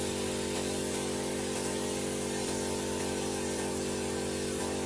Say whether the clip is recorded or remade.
recorded